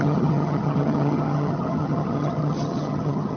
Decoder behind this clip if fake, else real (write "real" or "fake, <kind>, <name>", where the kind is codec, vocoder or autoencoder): fake, vocoder, HiFi-GAN